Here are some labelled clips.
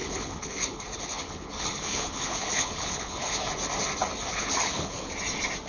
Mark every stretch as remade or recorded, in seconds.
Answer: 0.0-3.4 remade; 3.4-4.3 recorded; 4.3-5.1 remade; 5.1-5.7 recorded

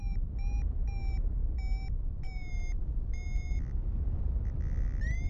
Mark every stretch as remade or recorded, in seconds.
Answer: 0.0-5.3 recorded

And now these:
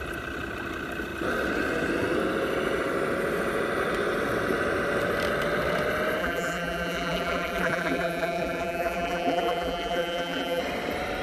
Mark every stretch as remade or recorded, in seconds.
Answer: 0.0-6.2 recorded; 6.2-10.6 remade; 10.6-11.2 recorded

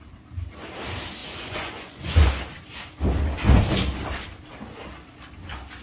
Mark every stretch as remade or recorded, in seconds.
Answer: 0.0-1.2 recorded; 1.2-2.3 remade; 2.3-5.8 recorded